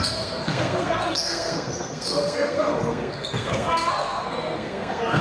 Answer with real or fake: fake